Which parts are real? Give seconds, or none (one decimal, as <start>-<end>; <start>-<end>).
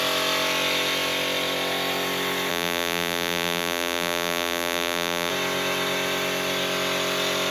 0.0-2.5; 5.3-7.5